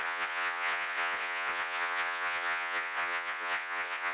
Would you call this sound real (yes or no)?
no